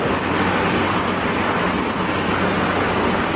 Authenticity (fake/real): real